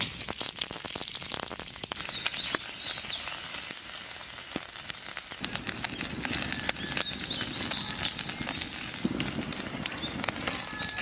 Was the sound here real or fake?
real